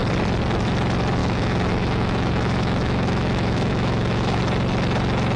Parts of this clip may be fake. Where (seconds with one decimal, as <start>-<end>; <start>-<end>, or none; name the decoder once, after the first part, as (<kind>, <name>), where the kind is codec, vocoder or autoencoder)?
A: 1.2-4.4 (autoencoder, DAC-VAE)